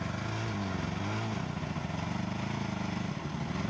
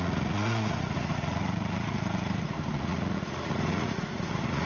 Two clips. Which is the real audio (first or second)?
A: first